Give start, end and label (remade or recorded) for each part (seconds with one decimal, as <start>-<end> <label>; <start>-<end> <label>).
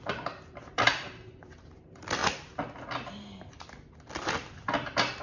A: 0.0-2.2 remade; 2.2-5.2 recorded